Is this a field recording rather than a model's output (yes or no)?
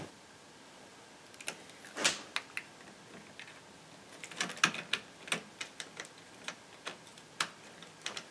yes